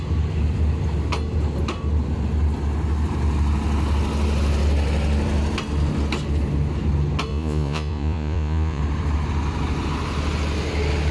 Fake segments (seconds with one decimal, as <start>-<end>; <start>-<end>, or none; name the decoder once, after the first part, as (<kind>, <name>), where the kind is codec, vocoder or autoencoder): 7.3-8.8 (vocoder, Vocos)

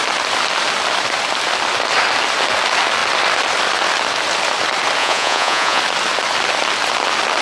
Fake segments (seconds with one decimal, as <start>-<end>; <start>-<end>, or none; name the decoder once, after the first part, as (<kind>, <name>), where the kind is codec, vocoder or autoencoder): 5.0-5.8 (vocoder, Vocos)

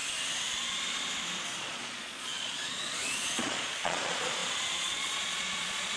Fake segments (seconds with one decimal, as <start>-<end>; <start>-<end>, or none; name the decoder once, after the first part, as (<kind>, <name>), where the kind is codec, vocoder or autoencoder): 1.6-6.0 (vocoder, Vocos)

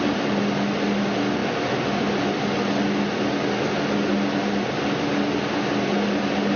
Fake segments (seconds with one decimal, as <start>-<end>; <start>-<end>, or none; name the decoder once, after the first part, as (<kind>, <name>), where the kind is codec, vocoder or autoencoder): none

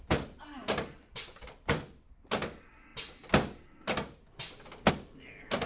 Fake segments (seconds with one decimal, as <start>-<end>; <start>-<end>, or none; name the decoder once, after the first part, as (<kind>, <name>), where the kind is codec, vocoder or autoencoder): none

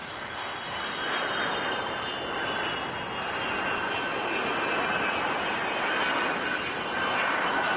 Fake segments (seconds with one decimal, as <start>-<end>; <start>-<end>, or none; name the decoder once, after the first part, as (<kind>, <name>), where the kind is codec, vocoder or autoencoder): none

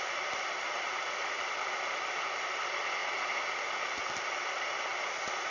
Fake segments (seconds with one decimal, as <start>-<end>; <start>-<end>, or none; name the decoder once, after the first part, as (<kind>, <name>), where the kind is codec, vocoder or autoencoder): none

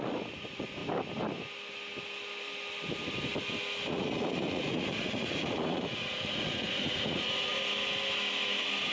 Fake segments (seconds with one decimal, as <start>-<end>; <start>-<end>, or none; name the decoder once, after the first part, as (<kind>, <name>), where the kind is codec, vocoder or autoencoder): 0.0-0.8 (vocoder, Vocos); 3.9-7.5